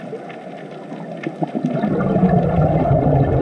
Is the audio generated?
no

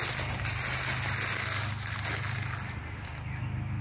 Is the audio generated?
no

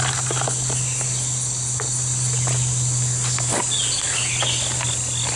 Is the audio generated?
no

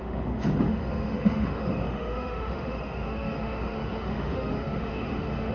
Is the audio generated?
yes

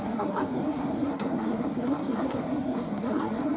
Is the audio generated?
yes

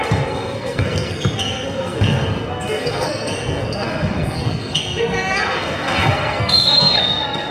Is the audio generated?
yes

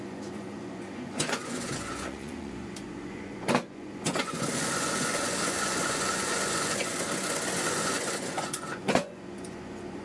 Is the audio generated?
yes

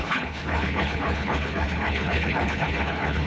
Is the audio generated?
yes